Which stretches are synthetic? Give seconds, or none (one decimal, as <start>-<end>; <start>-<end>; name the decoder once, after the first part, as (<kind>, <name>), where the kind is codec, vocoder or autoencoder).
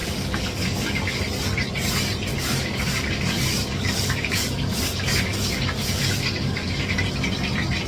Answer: 0.0-1.2 (codec, DAC); 2.3-7.0